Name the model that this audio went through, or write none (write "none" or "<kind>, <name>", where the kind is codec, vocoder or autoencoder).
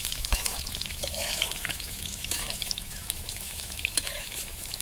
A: autoencoder, DAC-VAE